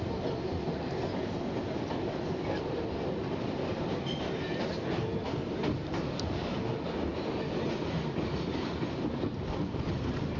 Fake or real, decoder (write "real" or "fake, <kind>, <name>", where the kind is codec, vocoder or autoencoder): real